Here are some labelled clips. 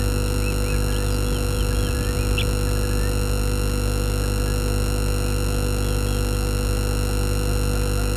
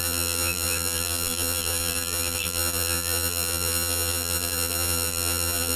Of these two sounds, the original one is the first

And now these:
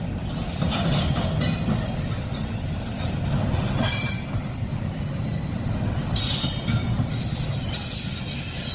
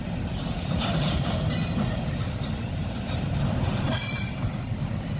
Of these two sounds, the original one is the first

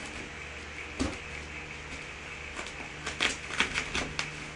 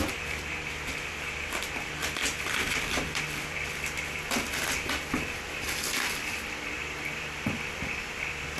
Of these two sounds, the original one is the first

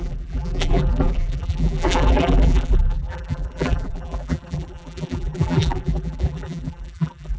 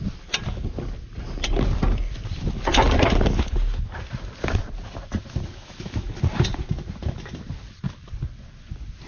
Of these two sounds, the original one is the second